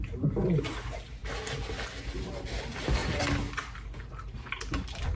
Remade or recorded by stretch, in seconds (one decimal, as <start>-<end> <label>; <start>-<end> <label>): 0.0-5.1 recorded